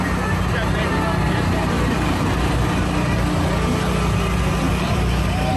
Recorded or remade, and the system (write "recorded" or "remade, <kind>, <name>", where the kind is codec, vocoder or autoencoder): recorded